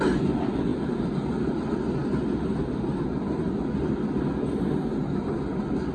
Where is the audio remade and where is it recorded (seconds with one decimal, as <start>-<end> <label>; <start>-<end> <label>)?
0.0-0.7 recorded; 0.7-1.6 remade; 1.6-5.9 recorded